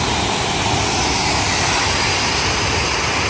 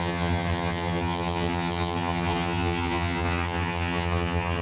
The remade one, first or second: second